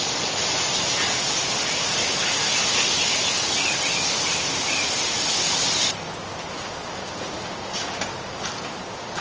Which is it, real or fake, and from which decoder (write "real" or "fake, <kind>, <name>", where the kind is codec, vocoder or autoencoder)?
real